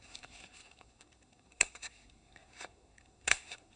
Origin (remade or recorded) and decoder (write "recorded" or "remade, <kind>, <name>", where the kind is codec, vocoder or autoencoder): remade, codec, SNAC